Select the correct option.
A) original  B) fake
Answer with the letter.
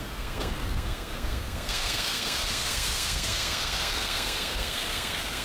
B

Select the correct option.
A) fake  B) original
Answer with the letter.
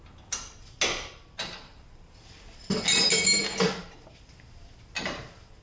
B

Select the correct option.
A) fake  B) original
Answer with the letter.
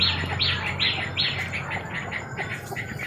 B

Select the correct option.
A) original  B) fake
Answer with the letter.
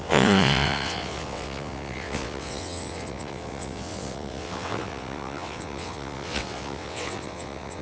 B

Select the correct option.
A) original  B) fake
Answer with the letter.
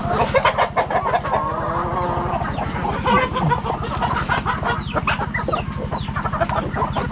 A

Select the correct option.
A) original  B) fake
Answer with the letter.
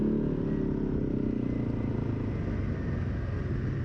A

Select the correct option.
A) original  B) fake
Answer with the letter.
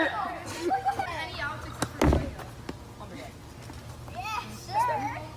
A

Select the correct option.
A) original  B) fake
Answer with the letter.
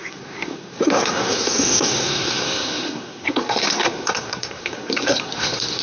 B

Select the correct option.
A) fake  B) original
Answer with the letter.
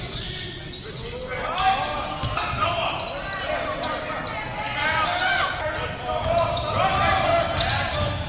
B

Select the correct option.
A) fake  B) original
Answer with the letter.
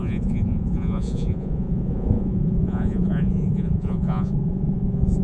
A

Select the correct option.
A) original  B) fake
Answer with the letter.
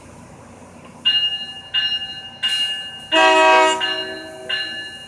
A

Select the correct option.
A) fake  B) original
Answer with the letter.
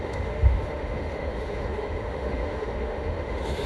A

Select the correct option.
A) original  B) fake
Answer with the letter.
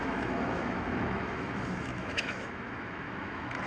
B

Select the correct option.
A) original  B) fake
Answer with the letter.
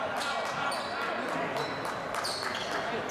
A